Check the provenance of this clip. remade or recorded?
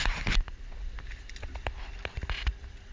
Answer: recorded